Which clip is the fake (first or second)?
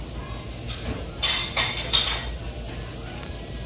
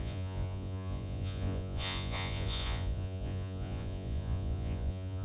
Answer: second